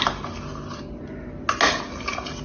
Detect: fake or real real